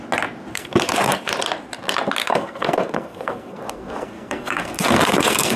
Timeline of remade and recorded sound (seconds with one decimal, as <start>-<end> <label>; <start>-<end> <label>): 0.0-0.5 recorded; 0.5-1.3 remade; 1.3-2.2 recorded; 2.2-5.6 remade